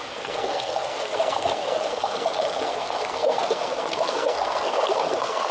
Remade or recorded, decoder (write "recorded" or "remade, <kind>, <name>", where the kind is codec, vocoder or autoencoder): remade, codec, SNAC